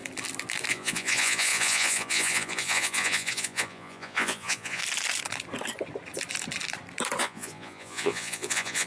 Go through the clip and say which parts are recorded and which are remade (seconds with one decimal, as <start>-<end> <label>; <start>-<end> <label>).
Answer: 0.0-0.7 recorded; 0.7-4.8 remade; 4.8-7.2 recorded; 7.2-8.9 remade

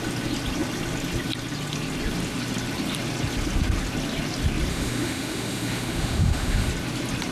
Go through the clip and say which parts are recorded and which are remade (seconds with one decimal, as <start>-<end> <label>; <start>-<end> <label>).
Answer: 0.0-4.7 recorded; 4.7-6.7 remade; 6.7-7.3 recorded

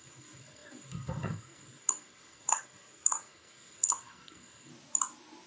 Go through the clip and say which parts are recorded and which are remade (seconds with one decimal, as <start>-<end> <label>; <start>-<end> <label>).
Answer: 0.0-4.7 remade; 4.7-5.5 recorded

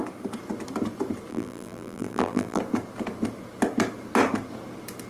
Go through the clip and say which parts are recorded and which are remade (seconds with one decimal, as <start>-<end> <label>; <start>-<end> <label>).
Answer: 0.0-1.3 recorded; 1.3-2.6 remade; 2.6-5.1 recorded